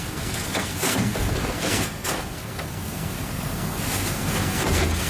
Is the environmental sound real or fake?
fake